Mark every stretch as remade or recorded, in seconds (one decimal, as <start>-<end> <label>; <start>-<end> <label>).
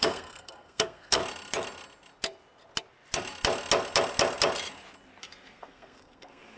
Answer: 0.0-1.2 remade; 1.2-5.2 recorded; 5.2-6.6 remade